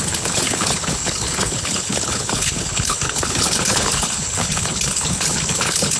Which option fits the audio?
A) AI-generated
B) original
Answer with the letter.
A